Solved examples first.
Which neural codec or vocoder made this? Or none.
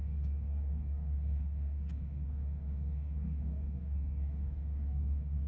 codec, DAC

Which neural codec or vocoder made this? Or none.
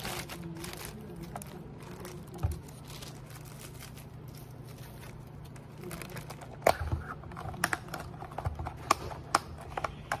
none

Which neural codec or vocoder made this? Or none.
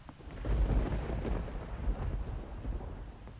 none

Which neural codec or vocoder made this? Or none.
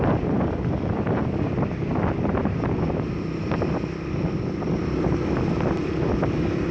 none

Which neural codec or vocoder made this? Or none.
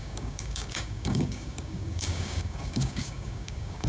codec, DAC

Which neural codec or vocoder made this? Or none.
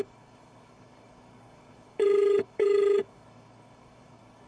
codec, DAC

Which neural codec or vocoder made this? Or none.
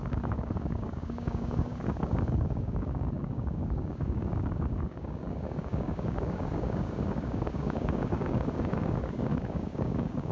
codec, DAC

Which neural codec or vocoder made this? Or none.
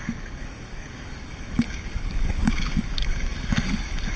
codec, DAC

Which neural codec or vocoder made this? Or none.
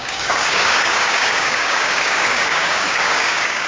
codec, DAC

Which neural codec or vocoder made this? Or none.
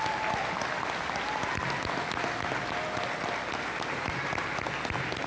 none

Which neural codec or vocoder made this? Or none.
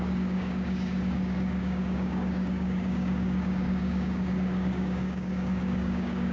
codec, DAC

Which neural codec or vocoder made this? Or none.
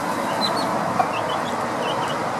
none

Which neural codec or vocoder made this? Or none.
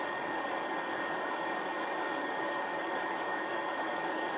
codec, DAC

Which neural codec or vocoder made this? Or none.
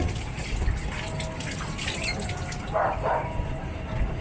none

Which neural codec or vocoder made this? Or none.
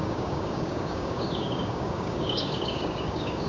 codec, DAC